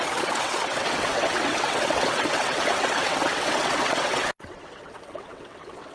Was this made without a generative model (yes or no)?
no